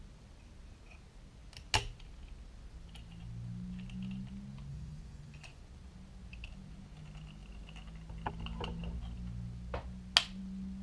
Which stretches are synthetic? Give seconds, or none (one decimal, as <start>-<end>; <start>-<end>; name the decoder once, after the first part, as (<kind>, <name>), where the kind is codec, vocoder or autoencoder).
4.7-5.6 (vocoder, Vocos)